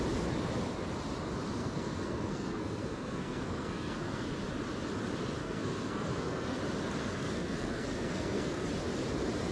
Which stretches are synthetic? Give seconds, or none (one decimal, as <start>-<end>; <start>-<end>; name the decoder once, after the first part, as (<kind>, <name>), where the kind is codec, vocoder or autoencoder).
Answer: 1.6-4.3 (codec, SNAC); 5.4-6.6; 7.0-8.7